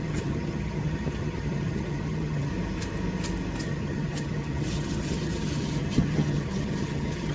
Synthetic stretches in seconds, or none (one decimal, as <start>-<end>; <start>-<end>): 0.0-2.5; 3.6-7.3